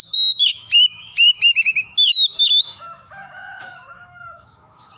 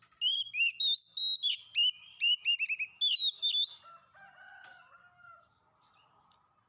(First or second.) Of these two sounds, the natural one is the second